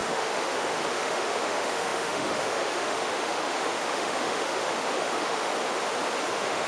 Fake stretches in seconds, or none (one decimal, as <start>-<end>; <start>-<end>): 0.0-5.5; 6.3-6.7